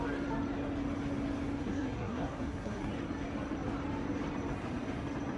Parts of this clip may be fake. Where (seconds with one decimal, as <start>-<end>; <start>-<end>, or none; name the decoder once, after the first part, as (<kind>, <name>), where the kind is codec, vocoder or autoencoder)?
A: 1.6-2.9 (codec, SNAC)